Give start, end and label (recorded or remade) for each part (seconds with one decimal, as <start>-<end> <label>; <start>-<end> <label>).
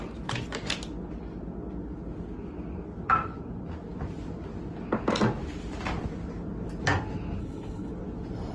0.0-7.4 recorded; 7.4-7.9 remade; 7.9-8.5 recorded